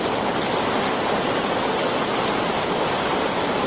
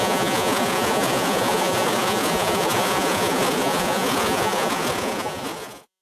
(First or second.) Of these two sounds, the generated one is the second